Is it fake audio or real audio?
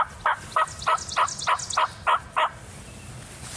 real